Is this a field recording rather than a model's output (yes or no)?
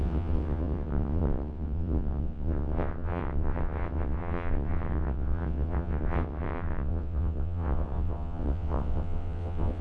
no